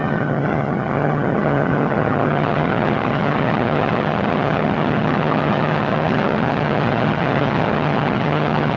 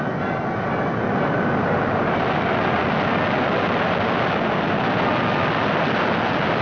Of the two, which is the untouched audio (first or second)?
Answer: second